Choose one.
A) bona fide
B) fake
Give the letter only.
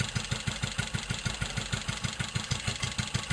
A